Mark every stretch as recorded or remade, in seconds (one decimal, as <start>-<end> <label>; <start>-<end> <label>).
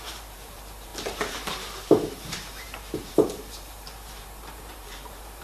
0.0-5.4 remade